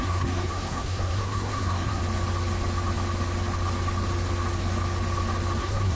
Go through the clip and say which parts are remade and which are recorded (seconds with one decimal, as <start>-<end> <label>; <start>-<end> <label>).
0.0-2.0 remade; 2.0-5.6 recorded; 5.6-6.0 remade